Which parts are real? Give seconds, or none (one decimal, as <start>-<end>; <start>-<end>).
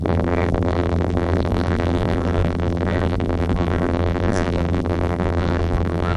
none